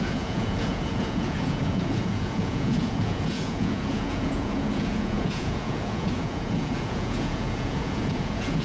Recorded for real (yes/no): no